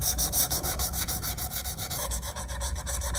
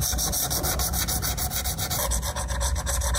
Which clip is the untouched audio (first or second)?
second